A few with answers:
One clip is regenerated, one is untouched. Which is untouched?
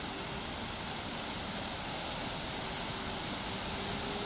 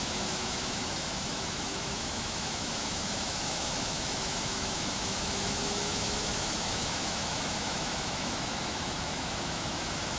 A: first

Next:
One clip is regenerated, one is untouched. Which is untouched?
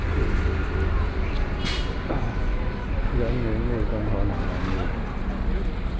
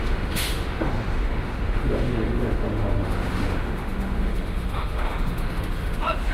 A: first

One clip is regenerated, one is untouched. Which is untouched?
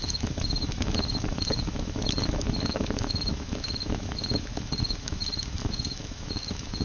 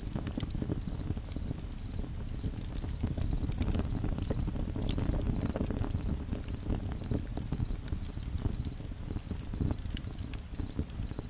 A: second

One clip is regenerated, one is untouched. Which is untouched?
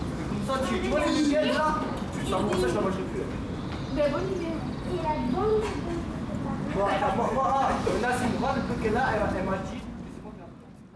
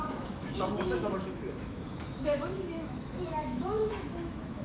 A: first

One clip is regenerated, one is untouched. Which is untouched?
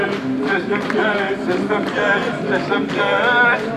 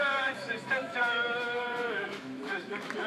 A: first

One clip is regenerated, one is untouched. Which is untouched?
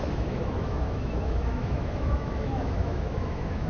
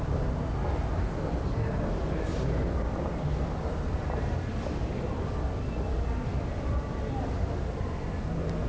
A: second